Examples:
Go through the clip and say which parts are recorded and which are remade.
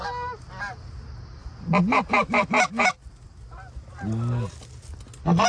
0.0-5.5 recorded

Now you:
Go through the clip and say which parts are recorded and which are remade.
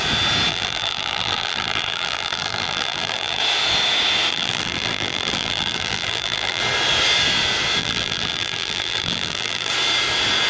0.0-0.5 recorded; 0.5-3.4 remade; 3.4-4.3 recorded; 4.3-6.6 remade; 6.6-7.8 recorded; 7.8-9.7 remade; 9.7-10.5 recorded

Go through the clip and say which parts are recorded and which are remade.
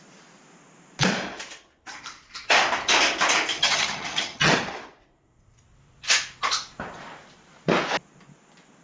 0.0-3.6 recorded; 3.6-4.5 remade; 4.5-8.8 recorded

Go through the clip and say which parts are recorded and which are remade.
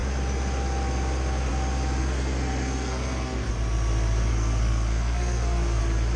0.0-2.0 recorded; 2.0-3.5 remade; 3.5-4.3 recorded; 4.3-5.8 remade; 5.8-6.2 recorded